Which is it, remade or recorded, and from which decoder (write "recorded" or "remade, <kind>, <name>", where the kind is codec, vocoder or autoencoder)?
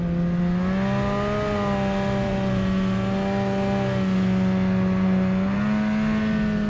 recorded